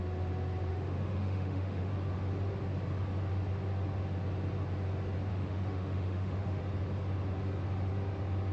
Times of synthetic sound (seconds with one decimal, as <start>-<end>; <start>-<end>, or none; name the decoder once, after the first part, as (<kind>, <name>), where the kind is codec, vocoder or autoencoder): 0.7-1.9 (autoencoder, DAC-VAE); 5.3-6.6